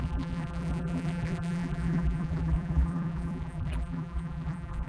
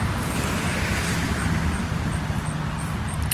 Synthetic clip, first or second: first